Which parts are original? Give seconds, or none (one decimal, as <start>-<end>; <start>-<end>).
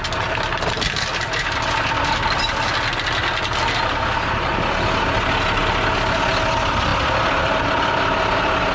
0.0-8.7